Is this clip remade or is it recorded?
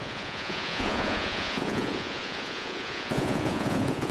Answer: remade